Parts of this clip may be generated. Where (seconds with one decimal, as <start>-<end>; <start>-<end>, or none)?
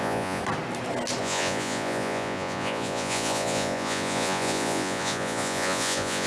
0.0-0.4; 1.2-6.3